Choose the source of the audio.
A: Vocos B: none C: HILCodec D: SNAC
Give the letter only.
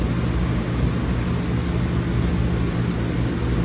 B